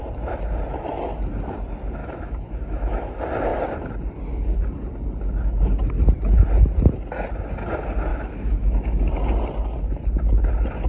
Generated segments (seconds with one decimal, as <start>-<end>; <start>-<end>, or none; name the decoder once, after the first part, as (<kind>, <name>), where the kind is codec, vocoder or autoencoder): 2.0-3.1 (autoencoder, DAC-VAE); 8.1-9.0